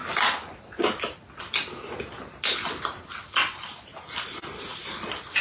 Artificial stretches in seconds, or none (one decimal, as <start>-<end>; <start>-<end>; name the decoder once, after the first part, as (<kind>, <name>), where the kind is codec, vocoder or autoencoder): none